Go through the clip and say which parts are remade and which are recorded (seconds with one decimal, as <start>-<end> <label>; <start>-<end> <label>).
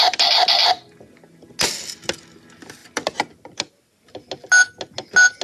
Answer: 0.0-2.8 recorded; 2.8-3.4 remade; 3.4-5.4 recorded